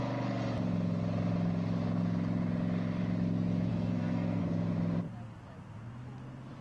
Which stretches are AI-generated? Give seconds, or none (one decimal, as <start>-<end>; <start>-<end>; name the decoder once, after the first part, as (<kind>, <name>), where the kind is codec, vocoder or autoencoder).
3.7-4.4 (codec, SNAC)